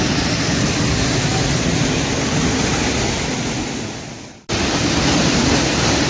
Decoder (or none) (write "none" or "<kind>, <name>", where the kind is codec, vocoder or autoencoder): none